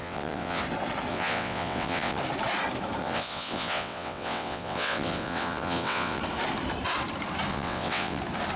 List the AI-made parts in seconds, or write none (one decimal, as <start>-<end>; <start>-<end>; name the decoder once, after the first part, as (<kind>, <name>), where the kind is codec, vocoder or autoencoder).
0.0-0.6 (vocoder, WaveNeXt); 1.1-2.2; 3.0-6.2; 7.5-8.2